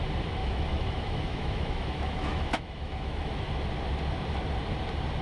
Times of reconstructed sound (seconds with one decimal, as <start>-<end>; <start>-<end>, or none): 0.4-3.5